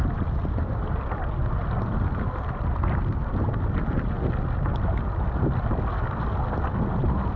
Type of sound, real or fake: real